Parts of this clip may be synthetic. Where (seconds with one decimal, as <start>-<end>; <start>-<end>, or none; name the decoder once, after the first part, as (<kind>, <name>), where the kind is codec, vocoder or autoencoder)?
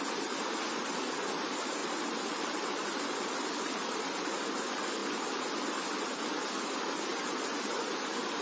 1.8-4.0 (vocoder, BigVGAN v2)